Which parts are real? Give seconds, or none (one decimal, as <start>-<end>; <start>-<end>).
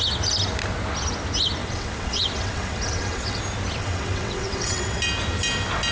0.0-1.6; 3.4-3.8; 5.0-5.9